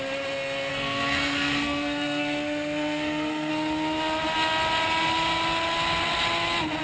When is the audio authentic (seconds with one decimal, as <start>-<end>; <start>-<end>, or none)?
0.0-0.7; 3.5-6.8